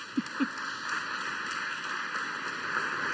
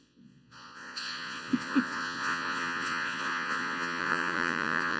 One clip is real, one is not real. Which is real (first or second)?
first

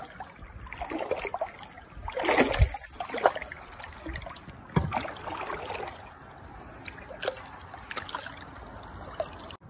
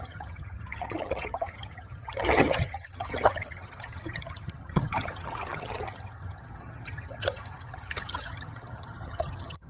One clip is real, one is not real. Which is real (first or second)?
first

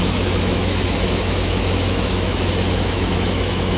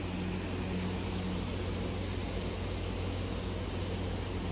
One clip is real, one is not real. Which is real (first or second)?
second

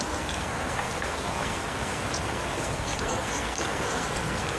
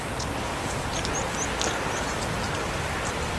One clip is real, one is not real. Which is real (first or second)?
second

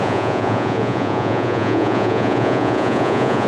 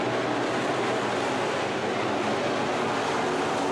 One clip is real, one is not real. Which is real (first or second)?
second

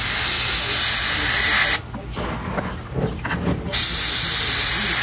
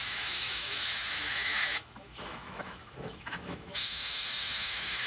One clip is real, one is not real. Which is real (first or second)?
first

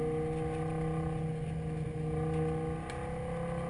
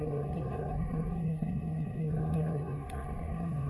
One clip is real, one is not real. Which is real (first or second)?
first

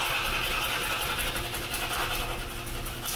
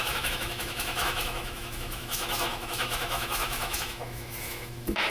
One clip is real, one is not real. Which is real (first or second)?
first